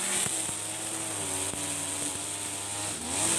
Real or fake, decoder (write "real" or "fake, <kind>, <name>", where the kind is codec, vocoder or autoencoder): real